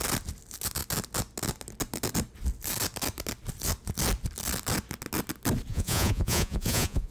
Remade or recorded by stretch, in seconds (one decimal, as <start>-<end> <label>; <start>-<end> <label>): 0.0-5.7 recorded; 5.7-7.1 remade